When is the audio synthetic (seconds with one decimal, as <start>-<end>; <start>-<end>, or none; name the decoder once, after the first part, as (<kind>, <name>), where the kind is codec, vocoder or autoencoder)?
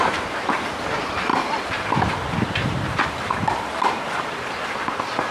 0.0-1.3 (vocoder, BigVGAN v2); 4.0-5.3